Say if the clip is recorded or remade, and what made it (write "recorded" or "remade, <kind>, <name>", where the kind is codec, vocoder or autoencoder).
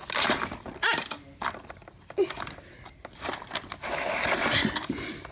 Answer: recorded